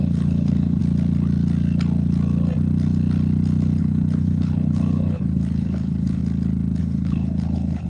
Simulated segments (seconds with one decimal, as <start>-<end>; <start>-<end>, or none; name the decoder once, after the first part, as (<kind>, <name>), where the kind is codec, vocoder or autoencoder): 0.0-0.8 (codec, HILCodec); 3.8-6.2; 6.8-7.9